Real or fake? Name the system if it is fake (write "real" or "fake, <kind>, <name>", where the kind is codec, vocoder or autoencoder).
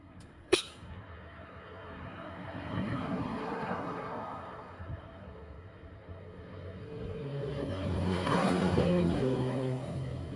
fake, codec, SNAC